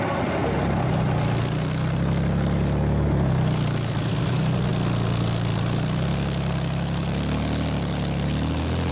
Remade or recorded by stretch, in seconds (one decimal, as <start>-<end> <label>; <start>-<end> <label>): 0.0-8.9 recorded